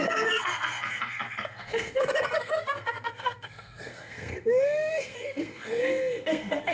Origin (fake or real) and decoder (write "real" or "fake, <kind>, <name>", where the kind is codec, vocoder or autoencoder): fake, codec, SNAC